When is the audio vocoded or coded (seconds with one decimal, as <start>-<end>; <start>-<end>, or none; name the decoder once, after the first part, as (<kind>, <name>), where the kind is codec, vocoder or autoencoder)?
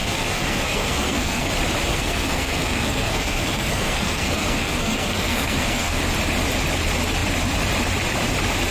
0.0-1.5 (codec, SNAC); 1.9-6.0